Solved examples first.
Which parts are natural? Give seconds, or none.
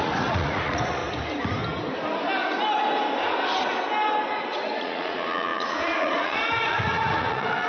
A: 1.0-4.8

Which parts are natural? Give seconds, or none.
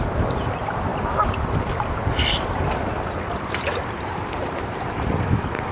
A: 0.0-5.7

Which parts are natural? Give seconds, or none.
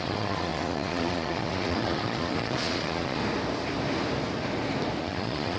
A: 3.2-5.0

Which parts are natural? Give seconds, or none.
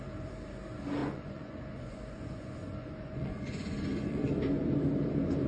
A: 0.0-1.0; 4.3-5.5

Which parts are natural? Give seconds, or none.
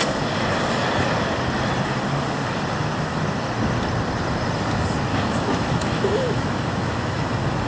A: 0.0-5.1; 7.3-7.7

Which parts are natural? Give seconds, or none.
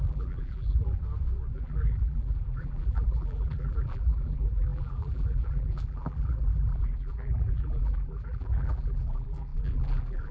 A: 1.0-1.5